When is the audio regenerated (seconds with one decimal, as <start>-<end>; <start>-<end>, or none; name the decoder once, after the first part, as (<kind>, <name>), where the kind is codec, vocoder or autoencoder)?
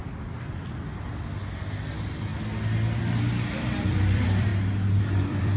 1.6-2.3 (vocoder, BigVGAN v2); 3.0-4.5; 5.0-5.6